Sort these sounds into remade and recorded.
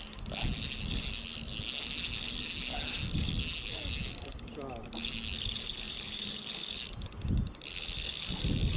recorded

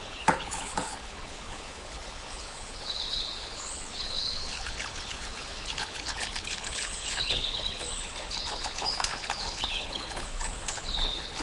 remade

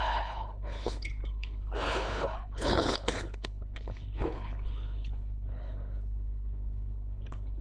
remade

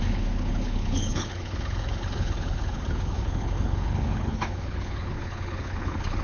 remade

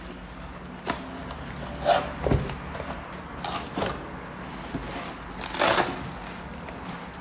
recorded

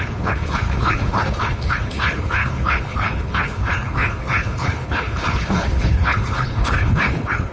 remade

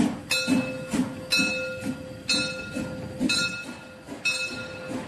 recorded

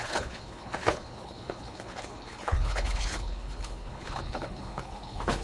remade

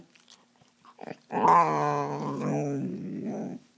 recorded